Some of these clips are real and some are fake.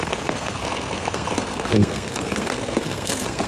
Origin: fake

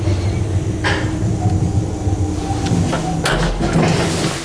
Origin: real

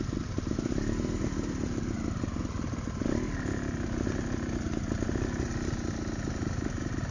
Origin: real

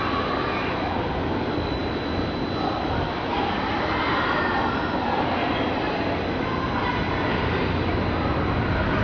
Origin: real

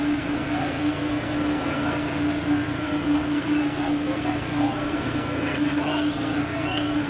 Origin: fake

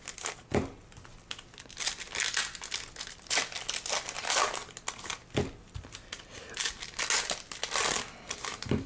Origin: real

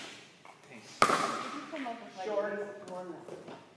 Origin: real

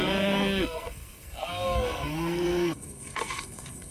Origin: fake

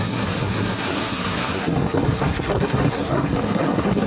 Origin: fake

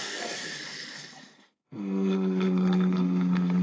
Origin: fake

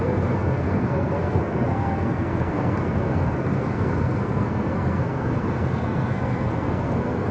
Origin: fake